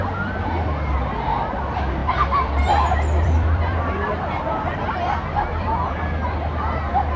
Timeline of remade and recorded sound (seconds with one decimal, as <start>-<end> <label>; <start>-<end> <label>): 0.0-2.0 recorded; 2.0-3.8 remade; 3.8-5.5 recorded; 5.5-6.0 remade; 6.0-7.2 recorded